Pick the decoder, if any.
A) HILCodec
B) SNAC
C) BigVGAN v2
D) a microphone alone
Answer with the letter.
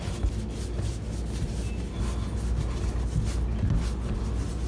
D